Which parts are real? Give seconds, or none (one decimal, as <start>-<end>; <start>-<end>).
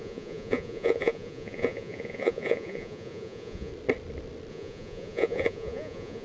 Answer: 3.7-4.5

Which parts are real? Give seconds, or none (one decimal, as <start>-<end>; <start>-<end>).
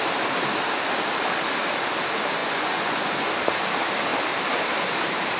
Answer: 0.0-2.4; 3.3-5.4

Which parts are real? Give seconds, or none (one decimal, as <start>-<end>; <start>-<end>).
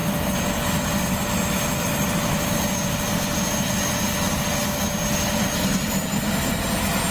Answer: 0.0-7.1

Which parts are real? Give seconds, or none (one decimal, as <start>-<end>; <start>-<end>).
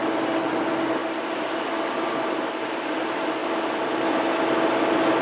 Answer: 0.0-5.2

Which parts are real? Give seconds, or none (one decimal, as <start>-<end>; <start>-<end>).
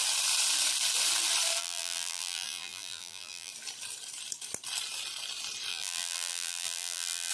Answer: 0.0-1.6; 3.5-5.7